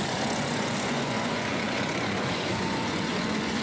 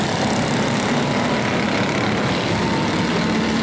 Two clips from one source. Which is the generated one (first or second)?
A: first